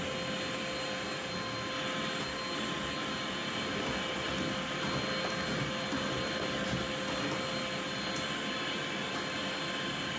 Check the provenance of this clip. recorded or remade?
recorded